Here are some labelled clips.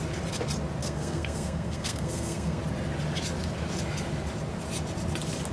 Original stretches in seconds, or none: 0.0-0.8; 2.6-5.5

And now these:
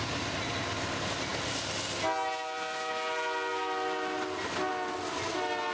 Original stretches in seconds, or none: 0.0-5.7

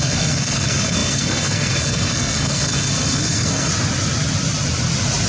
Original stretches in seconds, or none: 3.7-5.3

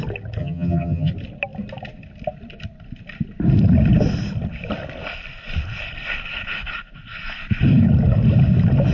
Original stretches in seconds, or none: 0.0-0.4; 1.1-8.9

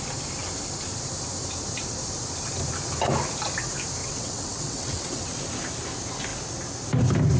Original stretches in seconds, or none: 0.0-4.0; 5.4-7.4

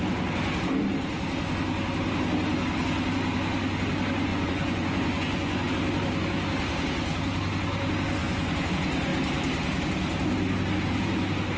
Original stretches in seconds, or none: 0.0-4.3; 5.7-8.2; 8.7-11.6

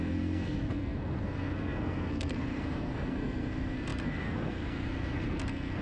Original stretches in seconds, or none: none